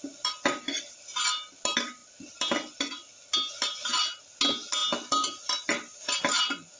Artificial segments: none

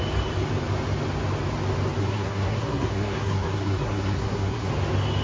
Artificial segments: 2.0-4.7 (codec, SNAC)

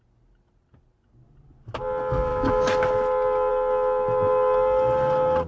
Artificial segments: none

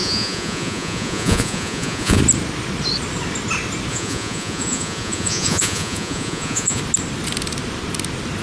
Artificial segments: 0.0-2.2 (vocoder, Vocos); 3.9-6.8

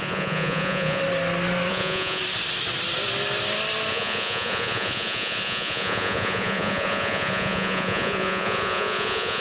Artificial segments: 0.0-1.0 (vocoder, Vocos); 1.7-2.2; 3.9-9.4

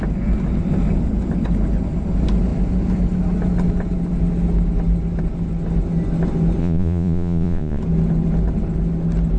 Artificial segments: 6.6-7.8 (vocoder, Vocos)

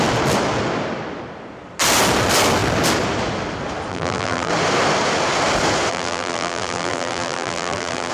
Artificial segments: 3.9-4.5 (vocoder, BigVGAN v2); 5.9-8.1